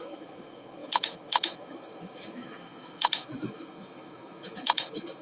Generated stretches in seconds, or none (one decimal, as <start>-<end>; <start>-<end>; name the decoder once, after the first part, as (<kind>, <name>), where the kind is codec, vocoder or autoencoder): 0.0-5.2 (autoencoder, DAC-VAE)